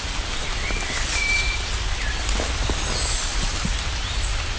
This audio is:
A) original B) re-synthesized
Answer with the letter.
A